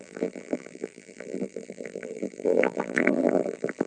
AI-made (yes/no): yes